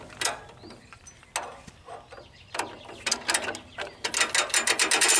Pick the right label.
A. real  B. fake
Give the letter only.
A